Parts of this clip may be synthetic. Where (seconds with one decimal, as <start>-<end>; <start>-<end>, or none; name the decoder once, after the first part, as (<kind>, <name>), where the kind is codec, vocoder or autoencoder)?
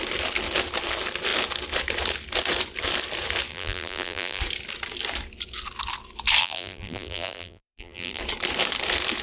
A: 3.5-4.4 (vocoder, BigVGAN v2); 6.4-8.2